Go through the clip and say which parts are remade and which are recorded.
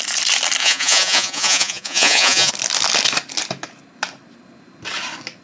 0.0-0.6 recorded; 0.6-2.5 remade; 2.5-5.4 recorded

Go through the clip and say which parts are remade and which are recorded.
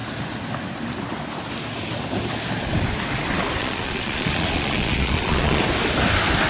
0.0-3.6 recorded; 3.6-5.6 remade; 5.6-6.5 recorded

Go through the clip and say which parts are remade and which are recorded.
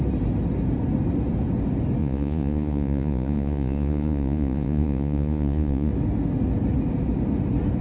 0.0-2.0 recorded; 2.0-5.9 remade; 5.9-7.8 recorded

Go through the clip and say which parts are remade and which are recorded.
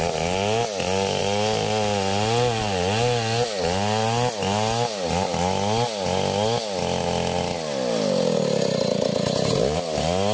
0.0-10.3 recorded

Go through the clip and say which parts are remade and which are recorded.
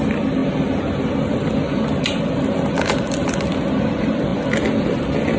0.0-5.4 recorded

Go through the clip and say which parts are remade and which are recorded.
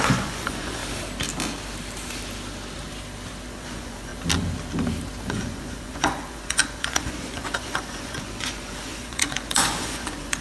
0.0-0.8 remade; 0.8-3.5 recorded; 3.5-4.1 remade; 4.1-5.3 recorded; 5.3-10.4 remade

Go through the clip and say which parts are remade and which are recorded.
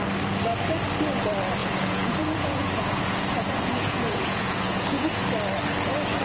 0.0-1.6 recorded; 1.6-5.3 remade; 5.3-6.2 recorded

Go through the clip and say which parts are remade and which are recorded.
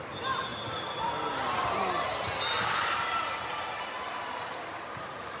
0.0-5.4 recorded